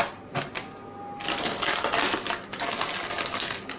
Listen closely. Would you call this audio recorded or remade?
recorded